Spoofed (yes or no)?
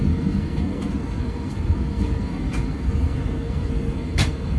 yes